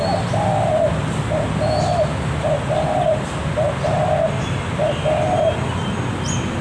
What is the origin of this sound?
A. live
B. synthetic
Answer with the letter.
A